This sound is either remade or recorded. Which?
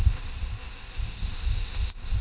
remade